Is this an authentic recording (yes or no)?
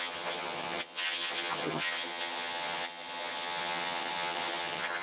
no